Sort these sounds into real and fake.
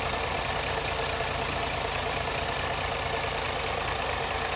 real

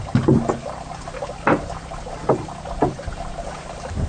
real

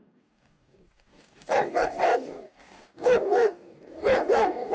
fake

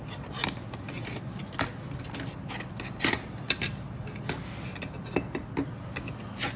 real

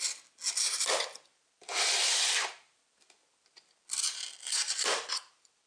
real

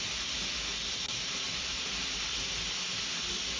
real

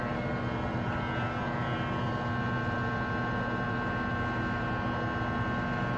real